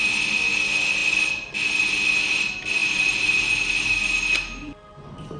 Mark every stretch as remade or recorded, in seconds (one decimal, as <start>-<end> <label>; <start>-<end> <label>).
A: 0.0-5.4 recorded